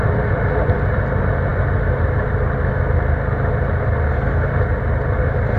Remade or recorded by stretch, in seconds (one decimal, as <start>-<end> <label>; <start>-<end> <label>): 0.0-5.6 recorded